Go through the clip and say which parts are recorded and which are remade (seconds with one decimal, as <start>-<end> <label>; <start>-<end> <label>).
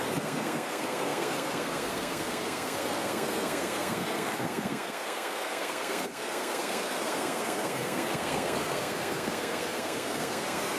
0.0-10.8 remade